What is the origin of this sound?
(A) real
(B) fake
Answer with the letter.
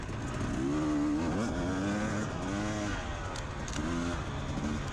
A